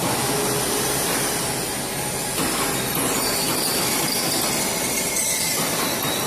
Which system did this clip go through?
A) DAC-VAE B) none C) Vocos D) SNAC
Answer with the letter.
B